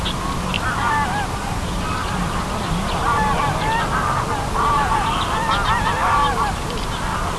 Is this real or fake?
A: real